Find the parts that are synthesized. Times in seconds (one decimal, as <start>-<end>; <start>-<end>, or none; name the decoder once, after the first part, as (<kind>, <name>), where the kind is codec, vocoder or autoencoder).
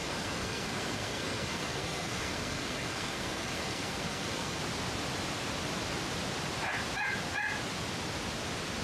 0.0-4.6 (codec, SNAC)